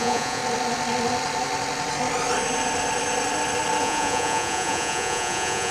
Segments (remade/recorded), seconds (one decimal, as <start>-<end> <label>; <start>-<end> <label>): 0.0-0.4 remade; 0.4-3.8 recorded; 3.8-5.7 remade